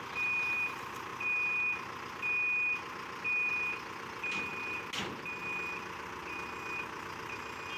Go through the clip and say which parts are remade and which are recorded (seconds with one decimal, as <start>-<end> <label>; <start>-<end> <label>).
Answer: 0.0-7.8 recorded